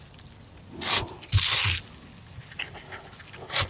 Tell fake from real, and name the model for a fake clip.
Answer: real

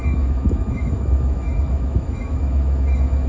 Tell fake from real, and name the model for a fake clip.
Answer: fake, autoencoder, DAC-VAE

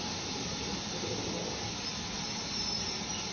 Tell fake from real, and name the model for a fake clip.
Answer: real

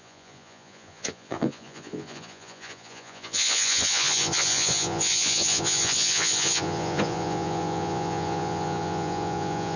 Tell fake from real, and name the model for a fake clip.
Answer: fake, vocoder, Vocos